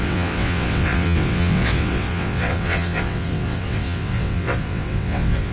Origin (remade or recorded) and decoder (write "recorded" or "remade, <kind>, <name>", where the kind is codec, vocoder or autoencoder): remade, vocoder, WaveNeXt